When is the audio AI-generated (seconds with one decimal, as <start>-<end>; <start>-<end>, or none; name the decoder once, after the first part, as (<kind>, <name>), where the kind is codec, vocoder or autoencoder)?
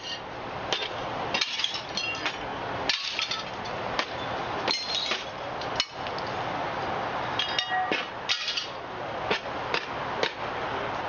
none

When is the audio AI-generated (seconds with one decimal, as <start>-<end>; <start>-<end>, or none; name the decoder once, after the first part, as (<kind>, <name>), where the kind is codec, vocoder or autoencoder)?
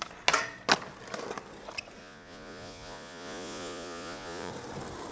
2.0-4.5 (vocoder, Vocos)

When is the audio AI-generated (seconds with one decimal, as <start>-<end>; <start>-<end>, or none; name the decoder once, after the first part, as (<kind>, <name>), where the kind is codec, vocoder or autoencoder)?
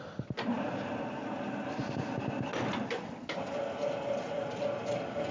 none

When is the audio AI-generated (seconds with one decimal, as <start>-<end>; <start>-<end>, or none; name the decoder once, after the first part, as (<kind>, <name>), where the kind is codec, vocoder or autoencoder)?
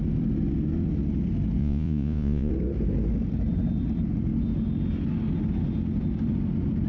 1.6-2.5 (vocoder, Vocos)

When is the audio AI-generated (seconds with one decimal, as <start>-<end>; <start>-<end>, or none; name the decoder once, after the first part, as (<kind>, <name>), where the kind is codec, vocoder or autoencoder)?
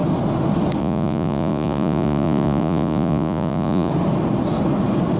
0.8-3.9 (vocoder, Vocos)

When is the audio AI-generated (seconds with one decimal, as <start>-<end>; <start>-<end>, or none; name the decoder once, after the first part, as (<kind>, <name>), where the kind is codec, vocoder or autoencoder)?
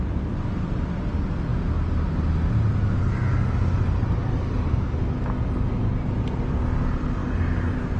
none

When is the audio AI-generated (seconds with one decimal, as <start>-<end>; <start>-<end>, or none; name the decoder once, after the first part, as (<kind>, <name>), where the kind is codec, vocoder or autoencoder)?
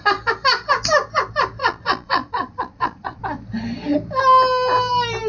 1.6-3.2 (vocoder, Vocos)